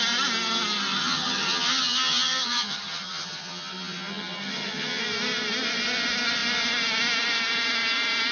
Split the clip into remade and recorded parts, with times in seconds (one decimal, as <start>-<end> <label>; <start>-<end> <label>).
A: 0.0-0.9 recorded; 0.9-5.0 remade; 5.0-8.3 recorded